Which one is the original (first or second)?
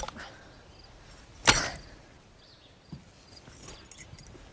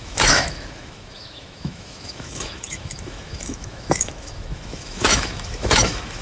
first